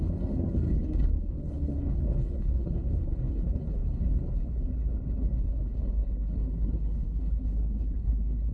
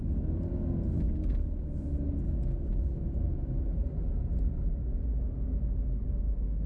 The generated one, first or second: first